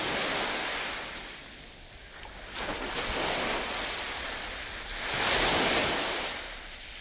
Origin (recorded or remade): recorded